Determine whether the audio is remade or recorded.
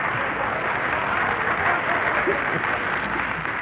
recorded